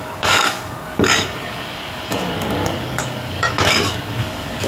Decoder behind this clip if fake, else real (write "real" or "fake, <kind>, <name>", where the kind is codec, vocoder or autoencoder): fake, codec, DAC